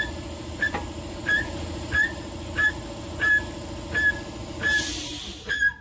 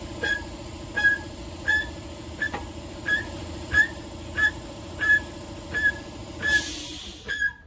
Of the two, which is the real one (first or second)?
first